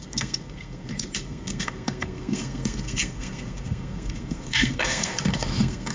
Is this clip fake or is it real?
fake